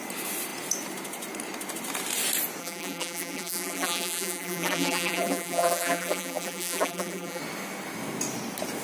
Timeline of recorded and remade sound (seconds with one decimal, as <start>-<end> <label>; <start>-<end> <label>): 0.0-2.6 recorded; 2.6-7.4 remade; 7.4-8.8 recorded